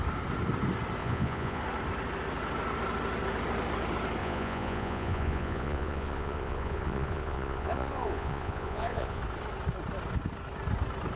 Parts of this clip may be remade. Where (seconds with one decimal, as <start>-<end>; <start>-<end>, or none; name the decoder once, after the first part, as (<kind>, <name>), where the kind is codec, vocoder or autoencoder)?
1.0-1.6 (vocoder, Vocos); 4.2-9.2